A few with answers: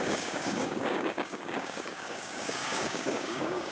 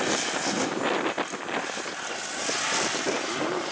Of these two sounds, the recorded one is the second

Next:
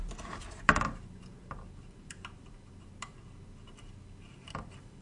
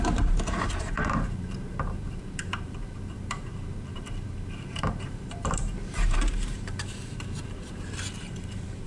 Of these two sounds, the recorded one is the first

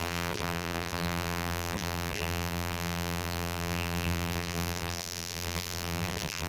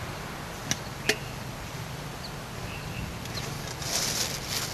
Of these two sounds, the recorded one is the second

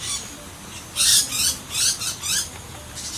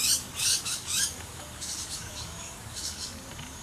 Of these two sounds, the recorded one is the first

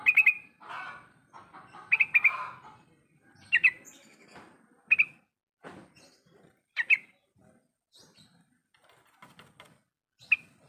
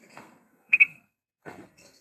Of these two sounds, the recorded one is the first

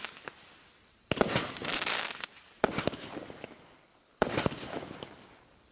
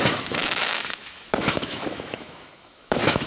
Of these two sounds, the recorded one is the first